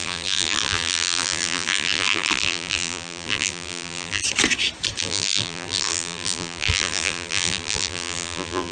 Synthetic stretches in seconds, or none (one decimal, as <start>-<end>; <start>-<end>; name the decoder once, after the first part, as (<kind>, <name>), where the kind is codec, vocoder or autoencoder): 0.0-4.2 (vocoder, BigVGAN v2); 5.0-8.7